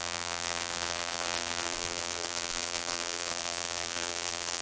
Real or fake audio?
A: fake